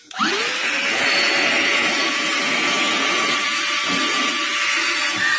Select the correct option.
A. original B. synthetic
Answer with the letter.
B